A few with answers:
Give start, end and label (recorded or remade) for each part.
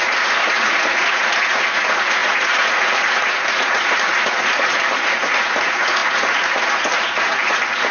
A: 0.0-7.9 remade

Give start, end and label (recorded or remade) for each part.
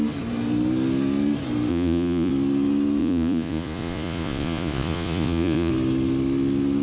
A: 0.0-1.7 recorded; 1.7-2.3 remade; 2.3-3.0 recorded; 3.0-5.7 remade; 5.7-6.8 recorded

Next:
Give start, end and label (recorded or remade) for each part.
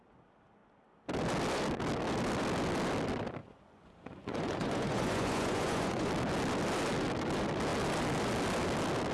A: 0.0-3.4 recorded; 3.4-6.1 remade; 6.1-9.1 recorded